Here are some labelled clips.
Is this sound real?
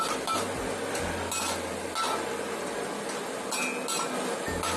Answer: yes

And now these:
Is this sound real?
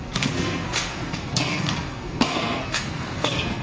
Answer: no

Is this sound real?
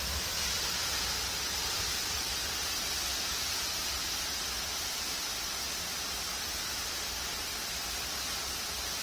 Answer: yes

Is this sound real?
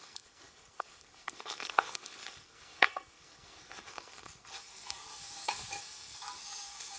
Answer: no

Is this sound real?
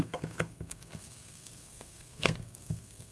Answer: no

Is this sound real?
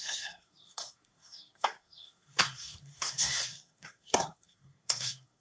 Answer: no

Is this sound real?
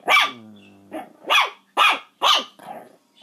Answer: yes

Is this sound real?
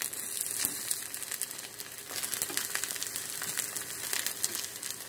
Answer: yes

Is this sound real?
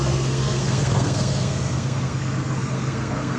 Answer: no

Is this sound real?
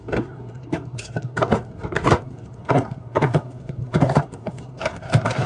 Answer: no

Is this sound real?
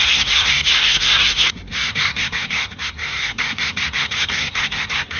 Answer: no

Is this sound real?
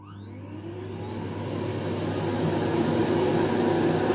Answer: yes